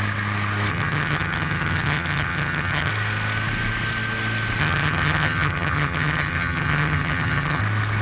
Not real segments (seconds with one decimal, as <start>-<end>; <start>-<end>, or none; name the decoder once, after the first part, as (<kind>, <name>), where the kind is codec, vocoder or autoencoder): 0.7-2.9 (vocoder, HiFi-GAN); 4.6-7.6